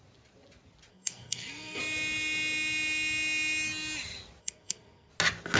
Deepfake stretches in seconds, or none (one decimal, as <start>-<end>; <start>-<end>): 0.9-1.8; 4.4-5.1